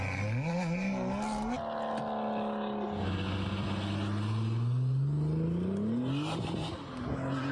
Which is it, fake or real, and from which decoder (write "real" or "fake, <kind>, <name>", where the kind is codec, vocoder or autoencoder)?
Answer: real